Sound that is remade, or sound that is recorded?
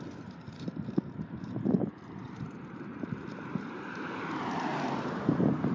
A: remade